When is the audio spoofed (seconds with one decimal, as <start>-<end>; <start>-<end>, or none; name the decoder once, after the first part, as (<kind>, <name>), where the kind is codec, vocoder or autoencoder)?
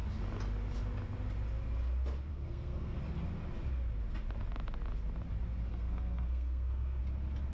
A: 2.3-3.0 (codec, SNAC); 5.7-7.0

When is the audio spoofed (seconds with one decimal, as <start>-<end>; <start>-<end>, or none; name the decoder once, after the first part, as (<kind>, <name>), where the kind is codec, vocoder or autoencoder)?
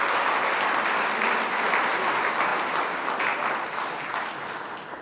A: none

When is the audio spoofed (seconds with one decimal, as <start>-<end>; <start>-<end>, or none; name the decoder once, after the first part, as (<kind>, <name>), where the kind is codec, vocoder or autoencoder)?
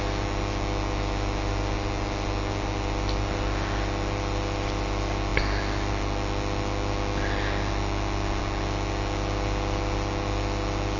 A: none